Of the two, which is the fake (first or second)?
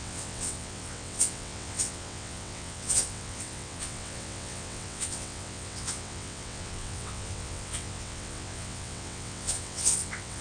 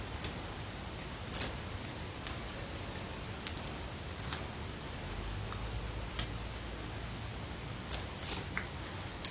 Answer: first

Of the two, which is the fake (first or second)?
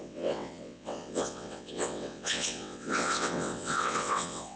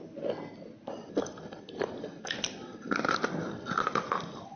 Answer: first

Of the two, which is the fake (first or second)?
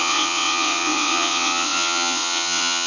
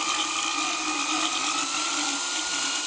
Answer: first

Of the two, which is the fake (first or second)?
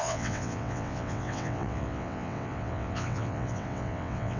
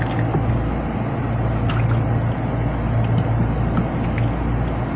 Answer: first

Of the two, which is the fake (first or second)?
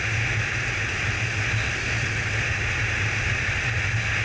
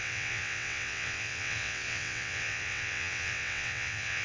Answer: second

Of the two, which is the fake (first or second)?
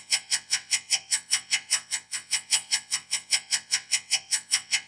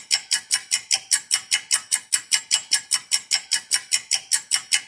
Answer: first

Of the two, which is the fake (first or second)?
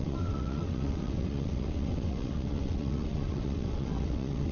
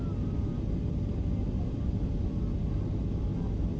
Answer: first